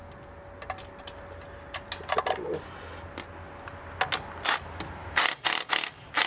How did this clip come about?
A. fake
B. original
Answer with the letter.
B